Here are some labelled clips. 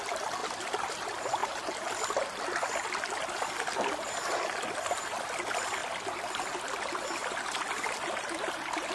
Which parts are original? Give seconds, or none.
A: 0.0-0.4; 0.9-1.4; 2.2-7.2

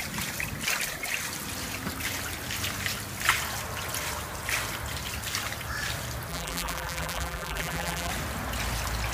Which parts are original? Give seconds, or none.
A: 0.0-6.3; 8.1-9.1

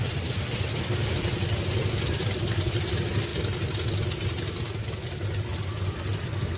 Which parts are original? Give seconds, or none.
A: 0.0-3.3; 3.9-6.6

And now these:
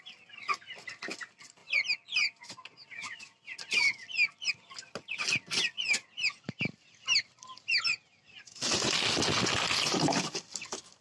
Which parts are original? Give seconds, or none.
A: 0.0-11.0

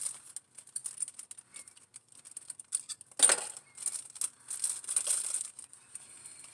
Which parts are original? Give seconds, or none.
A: 0.0-6.5

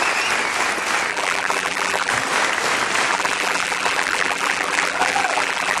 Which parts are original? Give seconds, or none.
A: 0.0-1.1; 2.1-3.1

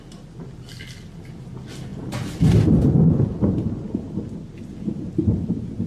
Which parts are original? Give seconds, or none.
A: 0.0-0.7; 1.4-5.9